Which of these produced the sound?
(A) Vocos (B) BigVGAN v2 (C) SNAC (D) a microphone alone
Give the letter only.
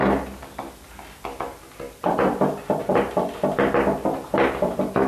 D